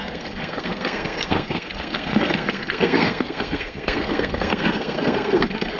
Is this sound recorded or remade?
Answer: remade